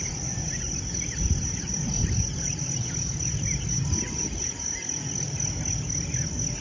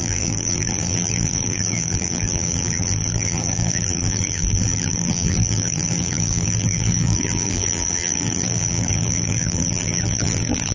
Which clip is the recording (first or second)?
first